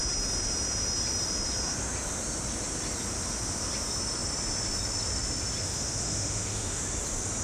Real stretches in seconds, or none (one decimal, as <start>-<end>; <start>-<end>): 0.0-5.6; 6.8-7.4